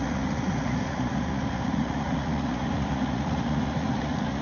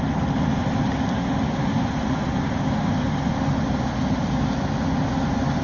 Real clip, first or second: second